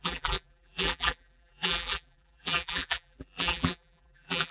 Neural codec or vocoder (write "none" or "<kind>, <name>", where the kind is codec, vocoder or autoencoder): vocoder, BigVGAN v2